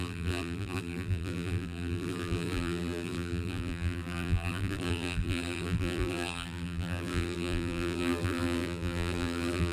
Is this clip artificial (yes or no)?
yes